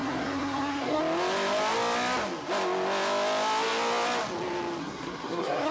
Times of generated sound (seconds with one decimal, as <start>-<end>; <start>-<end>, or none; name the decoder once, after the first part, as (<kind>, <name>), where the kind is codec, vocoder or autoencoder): 0.0-1.0 (codec, SNAC); 4.8-5.7